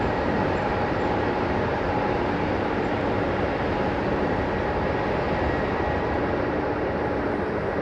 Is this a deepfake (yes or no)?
yes